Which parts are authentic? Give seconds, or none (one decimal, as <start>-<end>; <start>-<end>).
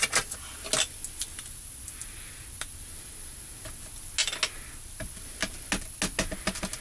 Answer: 0.0-6.8